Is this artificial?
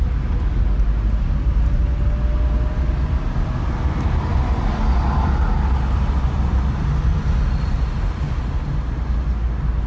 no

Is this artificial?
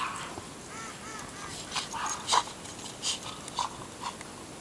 no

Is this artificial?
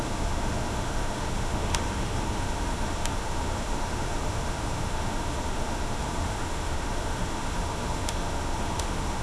yes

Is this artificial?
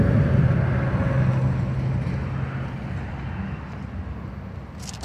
no